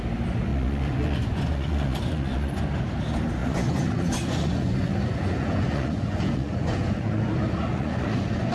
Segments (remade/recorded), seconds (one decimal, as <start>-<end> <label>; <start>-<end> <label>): 0.0-0.5 recorded; 0.5-2.6 remade; 2.6-3.4 recorded; 3.4-7.3 remade; 7.3-7.7 recorded; 7.7-8.5 remade